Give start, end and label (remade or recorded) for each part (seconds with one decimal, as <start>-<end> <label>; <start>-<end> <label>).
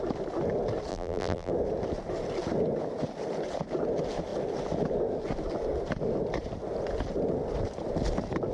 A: 0.0-0.9 recorded; 0.9-1.5 remade; 1.5-8.5 recorded